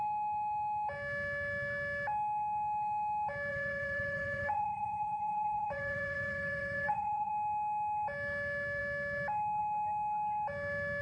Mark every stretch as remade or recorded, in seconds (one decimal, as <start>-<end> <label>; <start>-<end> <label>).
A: 0.0-3.5 recorded; 3.5-7.3 remade; 7.3-11.0 recorded